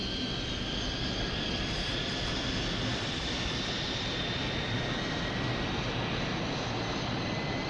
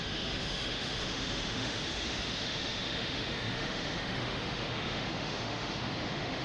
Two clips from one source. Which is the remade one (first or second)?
second